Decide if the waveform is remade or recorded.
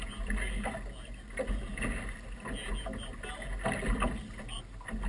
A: recorded